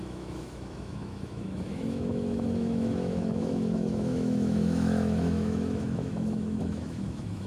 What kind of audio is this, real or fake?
fake